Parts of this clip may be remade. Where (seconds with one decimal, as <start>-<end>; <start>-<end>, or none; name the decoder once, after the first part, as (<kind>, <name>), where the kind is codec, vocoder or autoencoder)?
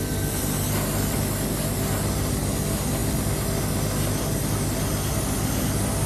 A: none